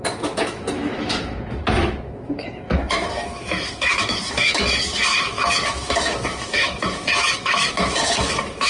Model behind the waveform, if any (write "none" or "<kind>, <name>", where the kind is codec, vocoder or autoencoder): autoencoder, DAC-VAE